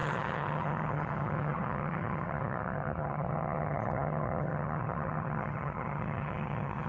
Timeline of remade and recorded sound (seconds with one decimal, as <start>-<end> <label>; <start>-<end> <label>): 0.0-6.9 remade